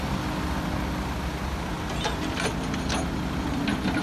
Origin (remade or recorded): recorded